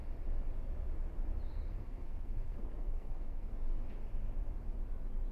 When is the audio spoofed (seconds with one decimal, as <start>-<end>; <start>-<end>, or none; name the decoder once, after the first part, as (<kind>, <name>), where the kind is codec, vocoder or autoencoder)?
1.5-3.5 (codec, SNAC)